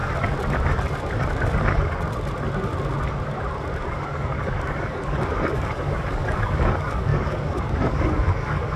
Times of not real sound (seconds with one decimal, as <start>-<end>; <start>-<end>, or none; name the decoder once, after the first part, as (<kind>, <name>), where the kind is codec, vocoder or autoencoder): 3.9-8.8 (codec, DAC)